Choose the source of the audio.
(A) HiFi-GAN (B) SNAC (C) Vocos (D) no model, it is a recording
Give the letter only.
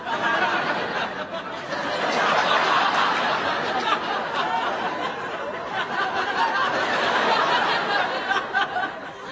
D